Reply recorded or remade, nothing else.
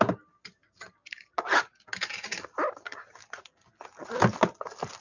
recorded